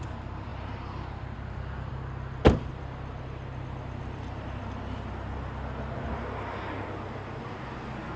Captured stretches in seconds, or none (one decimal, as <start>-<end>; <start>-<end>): 0.0-0.5; 1.9-2.7; 3.2-8.2